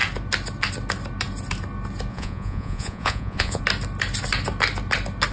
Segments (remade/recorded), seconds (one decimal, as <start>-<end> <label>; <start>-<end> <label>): 0.0-2.1 recorded; 2.1-3.6 remade; 3.6-5.3 recorded